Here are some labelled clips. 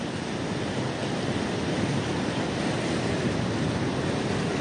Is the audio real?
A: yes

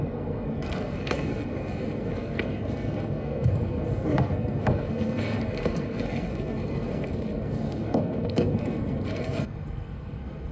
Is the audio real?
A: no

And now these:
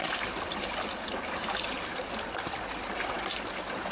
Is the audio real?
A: yes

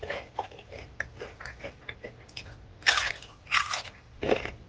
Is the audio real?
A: yes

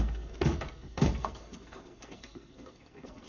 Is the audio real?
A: no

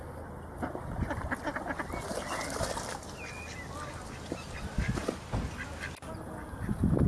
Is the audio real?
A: yes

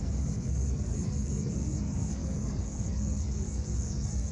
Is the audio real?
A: no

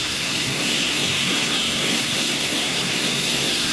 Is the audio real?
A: no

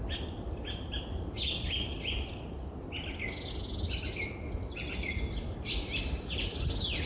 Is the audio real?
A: yes